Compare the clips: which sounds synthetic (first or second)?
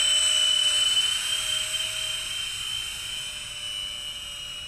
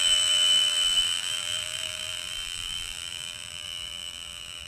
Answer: second